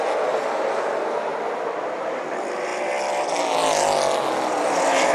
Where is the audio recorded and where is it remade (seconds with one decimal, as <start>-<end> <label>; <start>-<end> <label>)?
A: 0.0-1.3 recorded; 1.3-2.3 remade; 2.3-5.1 recorded